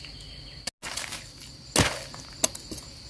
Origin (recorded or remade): recorded